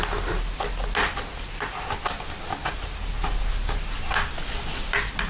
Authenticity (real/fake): real